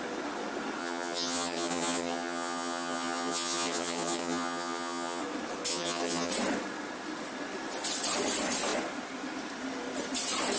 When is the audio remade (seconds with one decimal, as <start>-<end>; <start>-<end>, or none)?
0.8-5.2; 5.7-6.3